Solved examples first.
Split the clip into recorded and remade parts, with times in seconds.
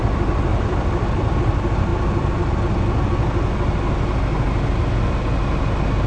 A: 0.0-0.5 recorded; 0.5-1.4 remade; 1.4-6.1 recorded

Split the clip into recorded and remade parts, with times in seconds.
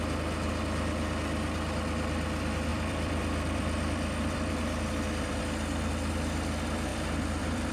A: 0.0-2.7 recorded; 2.7-5.4 remade; 5.4-6.9 recorded; 6.9-7.7 remade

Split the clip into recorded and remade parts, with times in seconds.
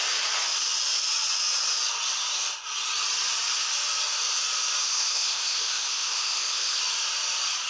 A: 0.0-4.8 recorded; 4.8-6.8 remade; 6.8-7.7 recorded